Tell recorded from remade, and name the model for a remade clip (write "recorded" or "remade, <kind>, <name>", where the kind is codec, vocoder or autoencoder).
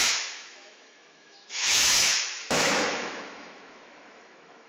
remade, autoencoder, DAC-VAE